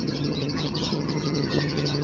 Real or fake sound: fake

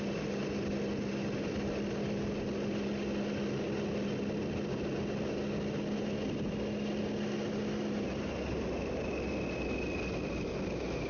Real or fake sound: real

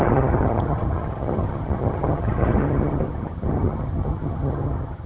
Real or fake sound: fake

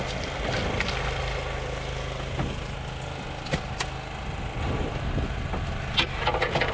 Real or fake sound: real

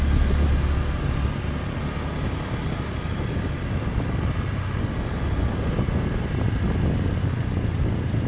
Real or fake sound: real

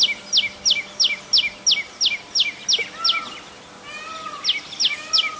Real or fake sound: real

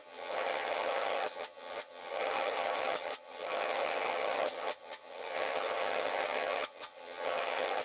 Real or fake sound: fake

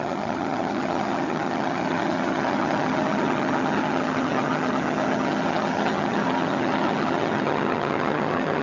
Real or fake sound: fake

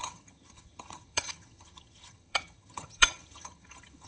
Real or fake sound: fake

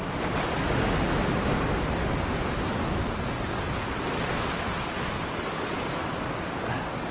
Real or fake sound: real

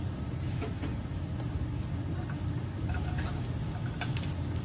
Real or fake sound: real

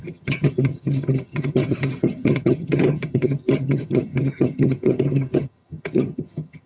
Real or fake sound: fake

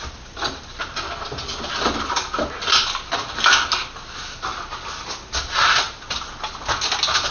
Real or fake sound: real